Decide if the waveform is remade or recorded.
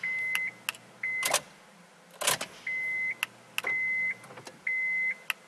recorded